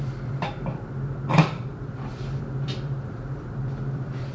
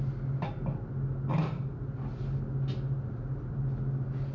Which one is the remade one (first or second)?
first